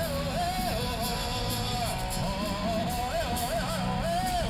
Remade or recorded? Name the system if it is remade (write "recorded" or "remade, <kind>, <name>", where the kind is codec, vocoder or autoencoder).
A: recorded